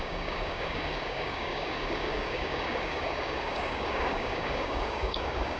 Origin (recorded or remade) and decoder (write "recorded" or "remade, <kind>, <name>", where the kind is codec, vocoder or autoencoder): remade, codec, DAC